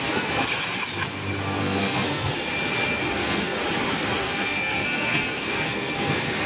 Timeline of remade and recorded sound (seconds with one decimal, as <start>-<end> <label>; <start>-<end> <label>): 0.0-0.5 remade; 0.5-1.6 recorded; 1.6-2.3 remade; 2.3-3.1 recorded; 3.1-3.6 remade; 3.6-4.2 recorded; 4.2-6.5 remade